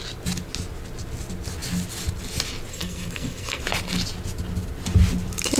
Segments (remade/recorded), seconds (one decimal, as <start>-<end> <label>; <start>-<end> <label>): 0.0-2.7 recorded; 2.7-3.6 remade; 3.6-5.6 recorded